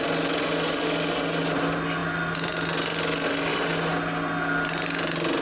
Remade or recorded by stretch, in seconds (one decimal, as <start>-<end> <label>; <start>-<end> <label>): 0.0-5.4 recorded